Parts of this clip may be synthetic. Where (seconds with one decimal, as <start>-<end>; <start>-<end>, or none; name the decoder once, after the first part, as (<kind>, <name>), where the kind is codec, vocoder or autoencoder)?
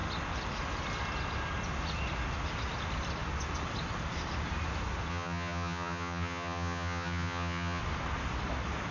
5.1-7.8 (vocoder, HiFi-GAN)